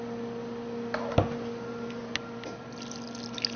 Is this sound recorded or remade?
recorded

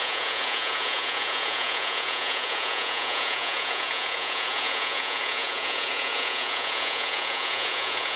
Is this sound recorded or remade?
remade